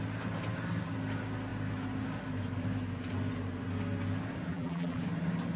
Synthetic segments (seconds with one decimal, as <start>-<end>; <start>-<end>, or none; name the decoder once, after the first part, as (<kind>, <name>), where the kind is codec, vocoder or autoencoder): 4.5-5.0 (vocoder, BigVGAN v2)